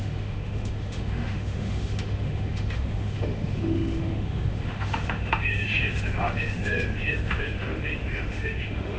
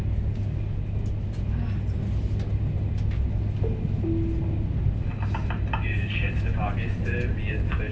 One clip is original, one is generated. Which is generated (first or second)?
first